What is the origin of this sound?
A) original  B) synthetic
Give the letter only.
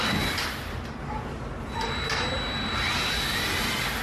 A